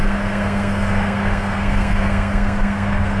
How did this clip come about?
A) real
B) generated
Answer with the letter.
B